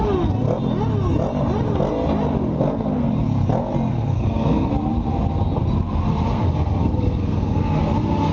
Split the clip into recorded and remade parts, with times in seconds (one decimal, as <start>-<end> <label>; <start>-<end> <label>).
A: 0.0-2.5 recorded; 2.5-3.1 remade; 3.1-3.9 recorded; 3.9-4.7 remade; 4.7-6.3 recorded; 6.3-7.8 remade; 7.8-8.3 recorded